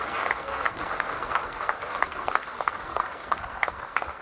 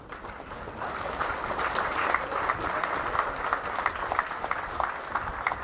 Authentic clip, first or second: second